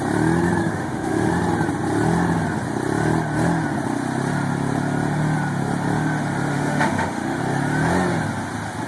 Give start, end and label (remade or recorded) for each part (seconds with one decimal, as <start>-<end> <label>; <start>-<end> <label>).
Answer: 0.0-0.6 recorded; 0.6-1.3 remade; 1.3-6.5 recorded; 6.5-7.4 remade; 7.4-8.9 recorded